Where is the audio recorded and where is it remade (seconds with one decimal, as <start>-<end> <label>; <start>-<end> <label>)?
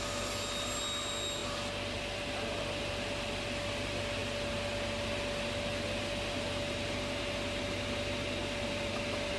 0.0-8.4 recorded; 8.4-9.0 remade; 9.0-9.4 recorded